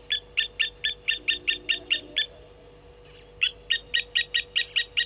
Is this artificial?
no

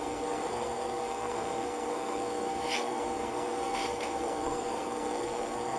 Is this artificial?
yes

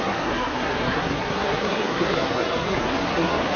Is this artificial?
yes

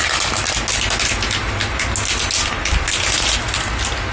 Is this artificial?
no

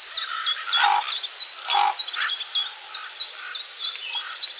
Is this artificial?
no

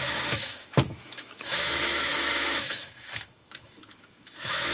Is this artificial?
yes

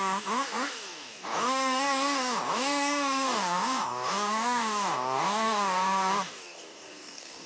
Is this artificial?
yes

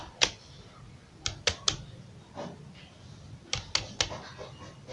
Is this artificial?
no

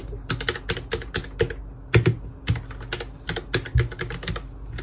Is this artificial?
no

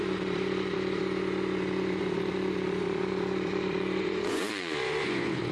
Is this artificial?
yes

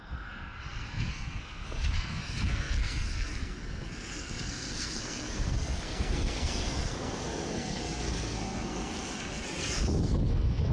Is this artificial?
yes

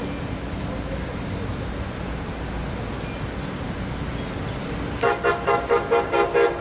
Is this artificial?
no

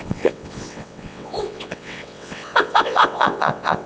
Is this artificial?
yes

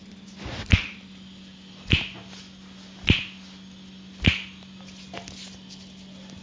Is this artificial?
no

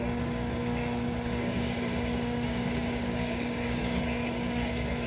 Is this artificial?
yes